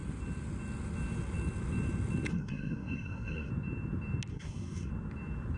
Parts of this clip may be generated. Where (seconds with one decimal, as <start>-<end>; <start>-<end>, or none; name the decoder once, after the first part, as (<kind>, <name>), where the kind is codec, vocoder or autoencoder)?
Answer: 2.3-3.5 (codec, SNAC); 4.3-4.9